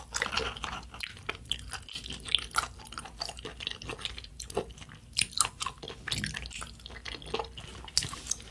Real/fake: real